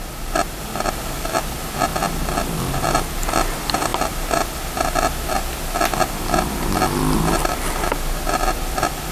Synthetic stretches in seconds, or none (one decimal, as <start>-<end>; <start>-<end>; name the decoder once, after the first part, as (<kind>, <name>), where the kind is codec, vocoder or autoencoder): none